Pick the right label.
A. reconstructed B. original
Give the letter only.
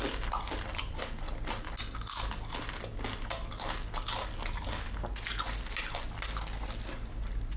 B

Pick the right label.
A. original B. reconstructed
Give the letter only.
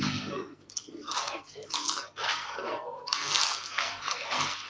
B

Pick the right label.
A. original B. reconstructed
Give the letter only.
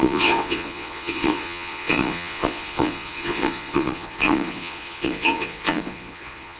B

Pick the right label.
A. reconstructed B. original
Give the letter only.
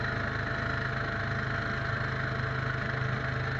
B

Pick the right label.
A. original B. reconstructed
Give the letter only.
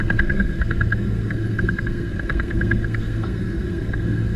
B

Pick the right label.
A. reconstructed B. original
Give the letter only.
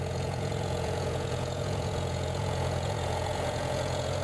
A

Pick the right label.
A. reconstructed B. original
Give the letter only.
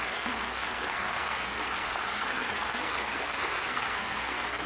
A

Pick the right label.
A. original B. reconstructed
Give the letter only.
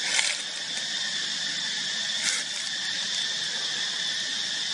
A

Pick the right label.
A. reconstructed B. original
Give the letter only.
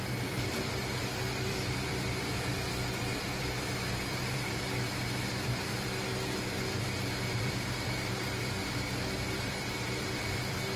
A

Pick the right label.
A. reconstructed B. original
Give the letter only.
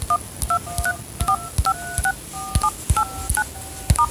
B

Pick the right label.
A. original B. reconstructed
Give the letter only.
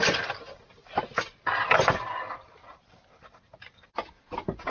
A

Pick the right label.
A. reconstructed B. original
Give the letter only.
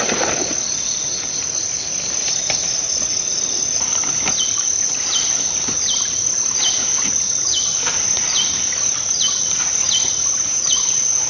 B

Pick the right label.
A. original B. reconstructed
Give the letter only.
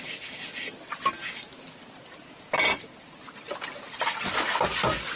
A